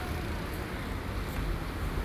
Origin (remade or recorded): recorded